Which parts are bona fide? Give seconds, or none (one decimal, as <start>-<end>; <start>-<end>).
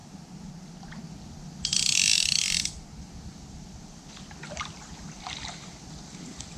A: 0.5-6.6